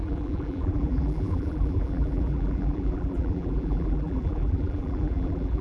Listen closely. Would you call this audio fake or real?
fake